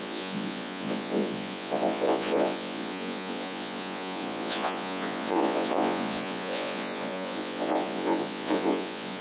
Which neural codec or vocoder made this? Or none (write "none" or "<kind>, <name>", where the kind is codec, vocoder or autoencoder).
vocoder, Vocos